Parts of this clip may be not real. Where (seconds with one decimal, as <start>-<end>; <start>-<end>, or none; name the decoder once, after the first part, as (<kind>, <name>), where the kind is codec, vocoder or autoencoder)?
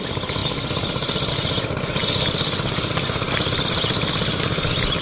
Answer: 0.0-0.4 (vocoder, BigVGAN v2); 1.3-2.0; 4.3-5.0